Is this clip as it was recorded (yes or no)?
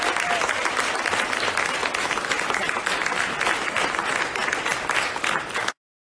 yes